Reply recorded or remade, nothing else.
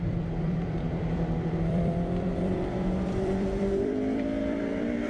remade